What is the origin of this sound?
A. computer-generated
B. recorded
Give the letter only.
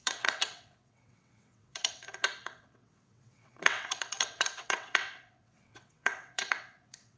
A